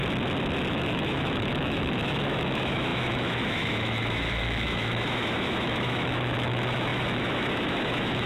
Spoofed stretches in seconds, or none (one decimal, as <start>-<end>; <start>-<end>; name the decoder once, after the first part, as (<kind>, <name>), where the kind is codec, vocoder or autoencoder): 0.7-8.3 (autoencoder, DAC-VAE)